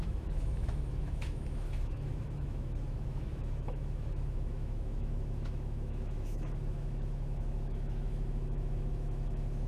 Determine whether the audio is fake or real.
fake